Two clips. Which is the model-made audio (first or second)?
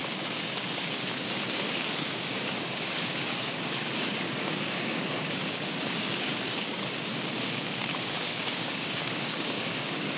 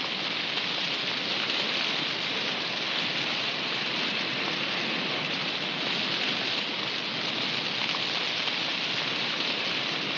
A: first